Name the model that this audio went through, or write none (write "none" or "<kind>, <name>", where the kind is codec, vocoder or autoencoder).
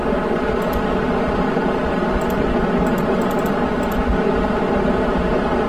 none